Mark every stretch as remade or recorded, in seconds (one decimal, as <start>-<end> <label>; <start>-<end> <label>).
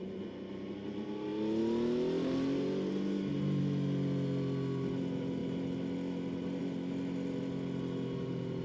0.0-8.6 recorded